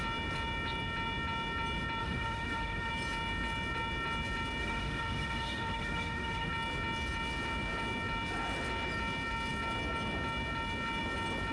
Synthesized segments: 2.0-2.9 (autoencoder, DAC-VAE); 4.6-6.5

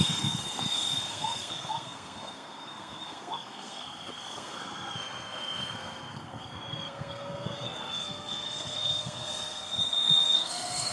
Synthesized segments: 0.0-10.9 (codec, SNAC)

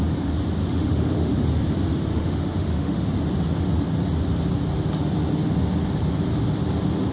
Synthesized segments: 0.6-1.3 (autoencoder, DAC-VAE); 2.1-3.0

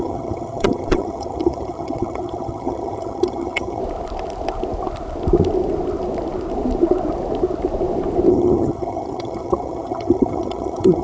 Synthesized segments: 0.0-3.8 (vocoder, HiFi-GAN); 8.3-11.0

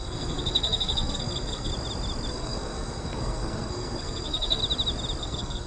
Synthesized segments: 0.0-1.7 (codec, SNAC); 2.3-4.6; 5.2-5.7

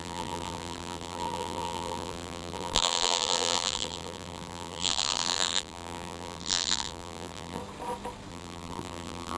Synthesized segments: 0.0-7.6 (vocoder, BigVGAN v2); 8.3-9.4